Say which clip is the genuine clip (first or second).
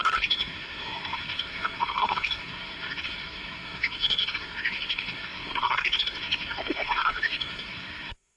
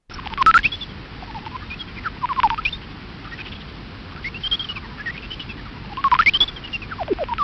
second